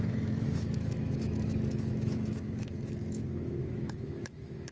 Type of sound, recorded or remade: remade